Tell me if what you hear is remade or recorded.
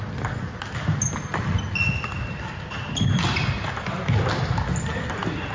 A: recorded